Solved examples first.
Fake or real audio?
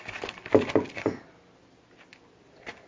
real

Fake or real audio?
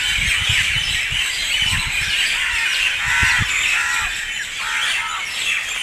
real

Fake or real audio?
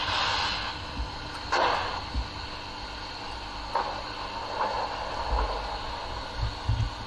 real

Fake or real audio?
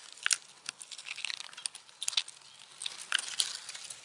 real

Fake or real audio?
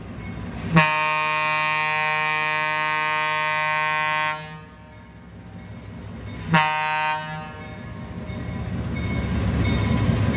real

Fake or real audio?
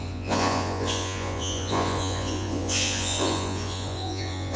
fake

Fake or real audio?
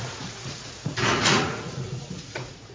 fake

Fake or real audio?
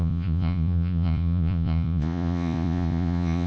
fake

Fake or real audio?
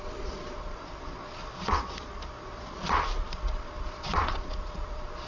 fake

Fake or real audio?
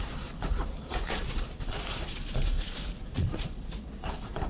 fake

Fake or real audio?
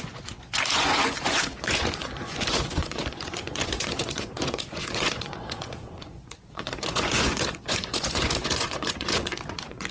fake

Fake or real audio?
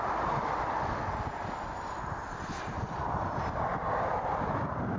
real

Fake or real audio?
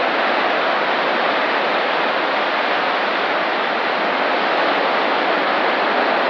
real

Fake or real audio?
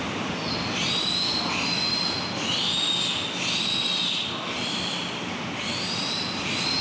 real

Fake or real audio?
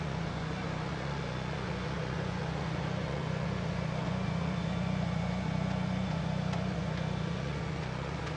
fake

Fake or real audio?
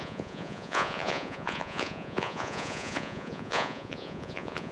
fake